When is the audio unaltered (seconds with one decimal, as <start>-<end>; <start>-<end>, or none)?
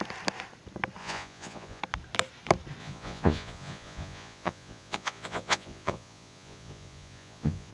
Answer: 0.0-1.0; 1.8-2.8